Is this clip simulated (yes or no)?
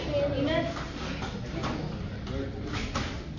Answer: no